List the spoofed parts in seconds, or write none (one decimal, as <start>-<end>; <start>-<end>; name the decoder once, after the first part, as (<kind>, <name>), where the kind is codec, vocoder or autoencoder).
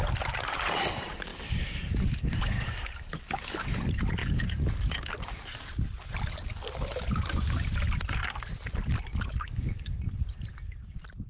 1.3-3.8 (codec, DAC); 4.2-5.1; 9.1-9.9